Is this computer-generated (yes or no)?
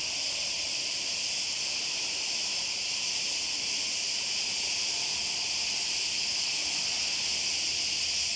no